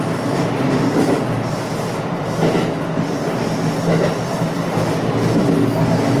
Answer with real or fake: real